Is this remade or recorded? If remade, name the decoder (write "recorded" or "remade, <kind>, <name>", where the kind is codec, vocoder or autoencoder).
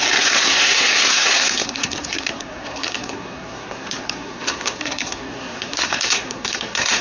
remade, codec, SNAC